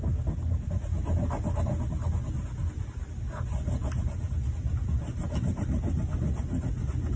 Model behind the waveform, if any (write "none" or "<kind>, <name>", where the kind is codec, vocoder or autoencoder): none